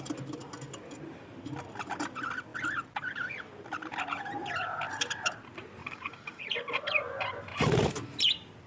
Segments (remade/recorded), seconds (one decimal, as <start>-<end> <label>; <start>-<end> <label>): 0.0-5.8 recorded; 5.8-6.4 remade; 6.4-8.7 recorded